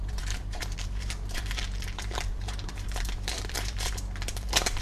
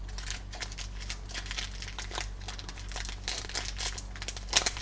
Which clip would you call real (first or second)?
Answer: second